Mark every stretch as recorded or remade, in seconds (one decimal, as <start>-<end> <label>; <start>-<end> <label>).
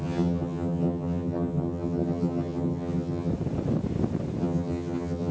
0.0-3.3 remade; 3.3-4.4 recorded; 4.4-5.3 remade